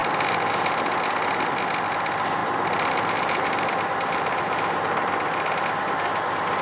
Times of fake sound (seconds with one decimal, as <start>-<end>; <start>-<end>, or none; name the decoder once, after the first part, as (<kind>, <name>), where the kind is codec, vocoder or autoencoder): 0.0-1.1 (vocoder, BigVGAN v2); 2.4-5.7